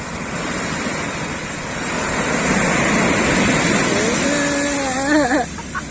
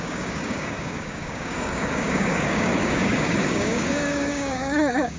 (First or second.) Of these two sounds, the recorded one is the first